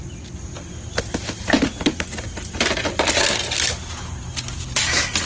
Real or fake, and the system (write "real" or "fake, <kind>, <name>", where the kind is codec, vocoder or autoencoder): real